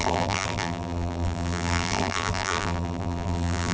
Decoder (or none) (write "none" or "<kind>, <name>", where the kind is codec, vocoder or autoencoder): vocoder, BigVGAN v2